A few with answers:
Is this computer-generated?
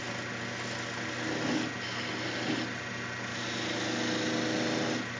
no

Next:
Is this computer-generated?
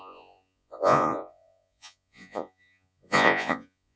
yes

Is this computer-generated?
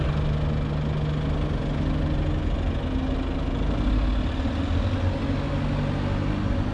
no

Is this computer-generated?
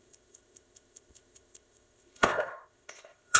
yes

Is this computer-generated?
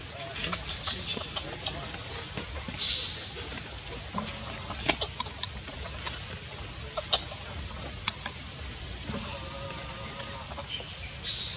no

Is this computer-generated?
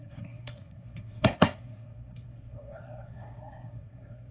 yes